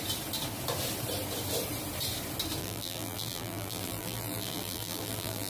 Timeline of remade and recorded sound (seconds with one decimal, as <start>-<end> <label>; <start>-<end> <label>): 0.0-2.6 recorded; 2.6-5.5 remade